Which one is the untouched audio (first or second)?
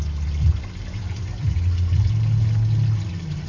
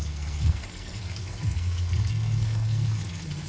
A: first